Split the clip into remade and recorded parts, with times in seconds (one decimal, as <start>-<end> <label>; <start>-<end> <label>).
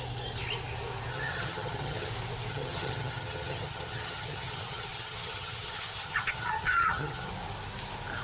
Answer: 0.0-1.1 recorded; 1.1-2.1 remade; 2.1-2.5 recorded; 2.5-7.3 remade; 7.3-8.2 recorded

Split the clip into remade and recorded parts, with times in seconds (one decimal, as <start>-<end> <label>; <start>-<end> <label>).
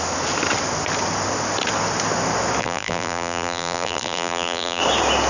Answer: 0.0-2.6 recorded; 2.6-4.8 remade; 4.8-5.3 recorded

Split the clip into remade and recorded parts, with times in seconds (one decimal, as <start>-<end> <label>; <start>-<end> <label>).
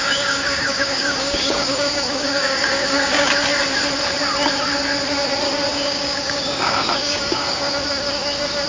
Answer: 0.0-3.3 remade; 3.3-5.7 recorded; 5.7-7.7 remade; 7.7-8.7 recorded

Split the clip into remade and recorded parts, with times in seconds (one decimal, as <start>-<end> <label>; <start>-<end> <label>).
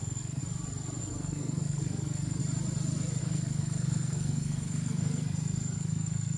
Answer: 0.0-0.4 remade; 0.4-1.0 recorded; 1.0-2.4 remade; 2.4-3.2 recorded; 3.2-6.4 remade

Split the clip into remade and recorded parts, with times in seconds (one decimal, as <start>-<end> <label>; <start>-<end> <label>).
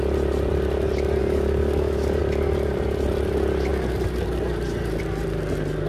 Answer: 0.0-1.2 recorded; 1.2-2.2 remade; 2.2-5.9 recorded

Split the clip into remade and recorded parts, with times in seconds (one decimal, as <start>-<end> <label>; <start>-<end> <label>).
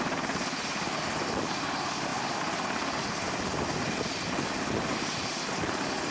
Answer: 0.0-6.1 recorded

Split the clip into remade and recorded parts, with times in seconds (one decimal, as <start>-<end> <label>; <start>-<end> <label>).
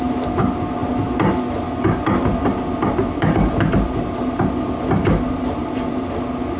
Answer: 0.0-6.6 recorded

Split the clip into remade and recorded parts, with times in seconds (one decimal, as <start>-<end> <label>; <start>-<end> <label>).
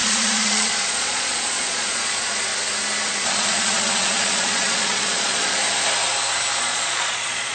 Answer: 0.0-2.5 remade; 2.5-3.1 recorded; 3.1-5.6 remade; 5.6-6.6 recorded; 6.6-7.5 remade